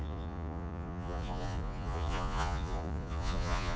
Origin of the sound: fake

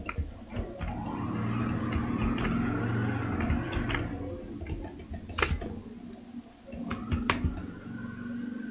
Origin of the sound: real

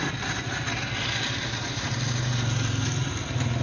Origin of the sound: real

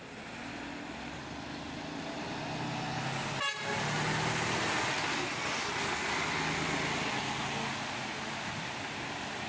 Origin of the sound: real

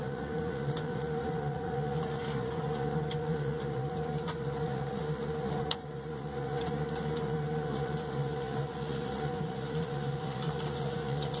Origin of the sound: fake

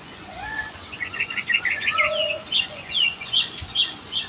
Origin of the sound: fake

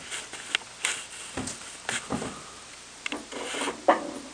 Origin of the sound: real